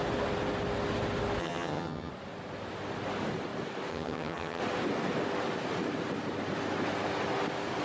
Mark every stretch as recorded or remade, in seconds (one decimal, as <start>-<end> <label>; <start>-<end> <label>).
0.0-1.4 recorded; 1.4-2.1 remade; 2.1-3.9 recorded; 3.9-4.6 remade; 4.6-7.8 recorded